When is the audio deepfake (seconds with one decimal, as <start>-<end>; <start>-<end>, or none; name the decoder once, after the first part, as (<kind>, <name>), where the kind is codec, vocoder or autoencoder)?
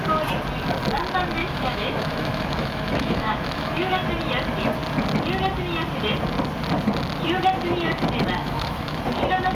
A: 1.4-3.9 (autoencoder, DAC-VAE); 8.4-9.0